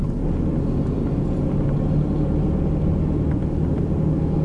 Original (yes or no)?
yes